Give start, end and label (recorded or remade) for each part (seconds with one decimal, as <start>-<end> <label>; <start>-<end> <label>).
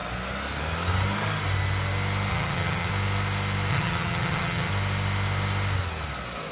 0.0-2.3 recorded; 2.3-2.9 remade; 2.9-3.7 recorded; 3.7-4.7 remade; 4.7-6.5 recorded